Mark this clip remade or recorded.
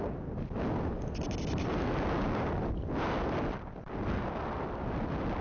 recorded